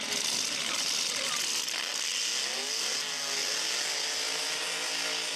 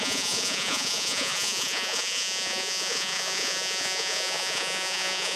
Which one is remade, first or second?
second